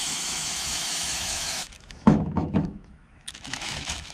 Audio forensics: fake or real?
fake